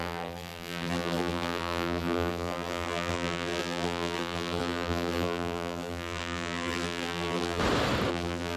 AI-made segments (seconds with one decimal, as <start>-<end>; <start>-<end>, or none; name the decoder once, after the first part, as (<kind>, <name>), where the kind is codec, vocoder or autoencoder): 0.0-7.6 (vocoder, BigVGAN v2); 8.1-8.6